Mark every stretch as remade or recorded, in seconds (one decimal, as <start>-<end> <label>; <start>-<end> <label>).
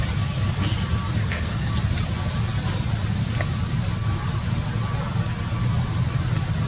0.0-1.2 recorded; 1.2-1.7 remade; 1.7-6.7 recorded